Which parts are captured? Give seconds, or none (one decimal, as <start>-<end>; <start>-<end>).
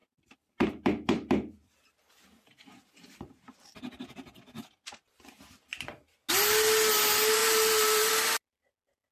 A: 3.5-7.4; 8.1-9.1